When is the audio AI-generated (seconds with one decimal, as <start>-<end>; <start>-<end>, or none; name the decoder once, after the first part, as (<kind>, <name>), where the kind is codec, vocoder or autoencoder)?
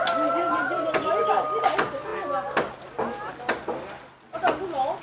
none